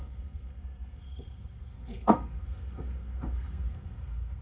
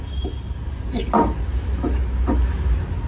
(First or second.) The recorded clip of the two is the second